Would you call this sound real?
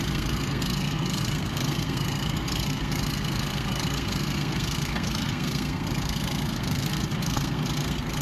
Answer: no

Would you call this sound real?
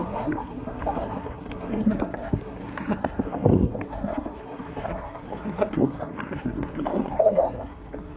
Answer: no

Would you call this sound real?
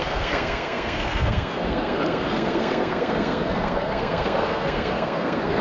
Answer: no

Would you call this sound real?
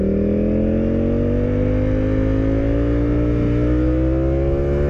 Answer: yes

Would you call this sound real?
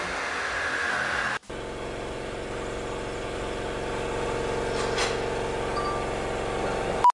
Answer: yes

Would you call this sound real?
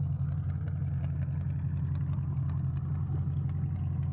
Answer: yes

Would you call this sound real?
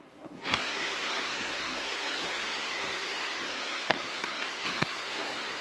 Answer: no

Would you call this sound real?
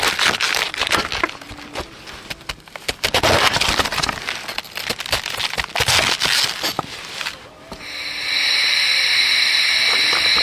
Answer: yes